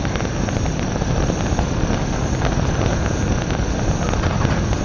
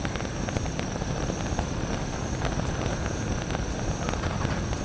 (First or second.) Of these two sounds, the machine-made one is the second